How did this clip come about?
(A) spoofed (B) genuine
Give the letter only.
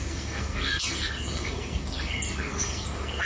A